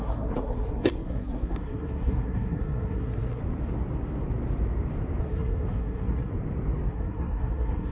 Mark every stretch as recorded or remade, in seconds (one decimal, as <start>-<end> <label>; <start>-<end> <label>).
0.0-3.4 remade; 3.4-5.2 recorded; 5.2-6.3 remade; 6.3-6.9 recorded; 6.9-7.9 remade